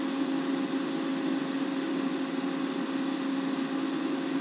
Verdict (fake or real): real